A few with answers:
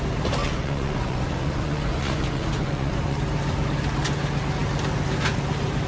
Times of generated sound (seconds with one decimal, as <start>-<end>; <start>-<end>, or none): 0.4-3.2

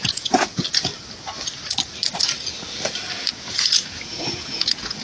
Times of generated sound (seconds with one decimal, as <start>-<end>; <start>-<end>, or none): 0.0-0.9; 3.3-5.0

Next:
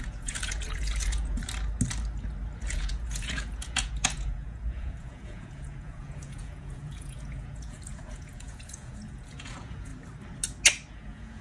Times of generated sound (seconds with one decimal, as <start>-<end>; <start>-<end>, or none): 0.0-1.4; 2.7-9.9; 10.9-11.4